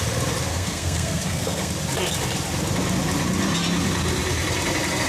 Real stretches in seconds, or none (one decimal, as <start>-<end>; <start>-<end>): 0.0-0.5; 1.7-5.1